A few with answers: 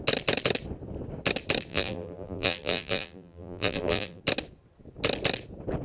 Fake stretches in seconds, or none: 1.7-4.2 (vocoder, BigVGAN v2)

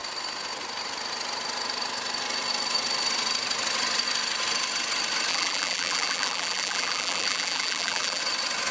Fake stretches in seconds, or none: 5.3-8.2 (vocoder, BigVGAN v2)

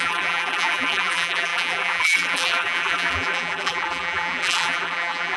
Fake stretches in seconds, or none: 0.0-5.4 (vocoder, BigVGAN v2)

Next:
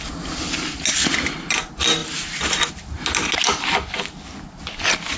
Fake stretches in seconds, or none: none

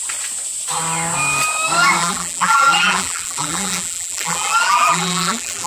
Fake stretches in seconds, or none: 2.0-5.7 (vocoder, BigVGAN v2)

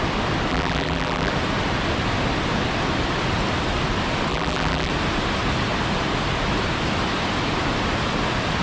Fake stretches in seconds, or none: 0.5-1.3 (vocoder, BigVGAN v2); 4.3-4.9

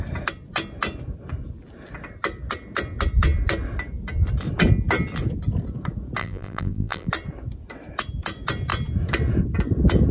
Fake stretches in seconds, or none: 6.2-7.1 (vocoder, BigVGAN v2)